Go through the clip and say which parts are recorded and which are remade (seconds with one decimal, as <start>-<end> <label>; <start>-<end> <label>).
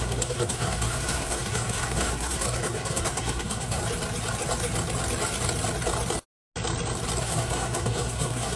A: 0.0-3.8 remade; 3.8-7.2 recorded; 7.2-8.6 remade